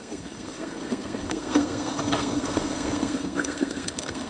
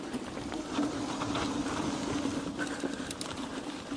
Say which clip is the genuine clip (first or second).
second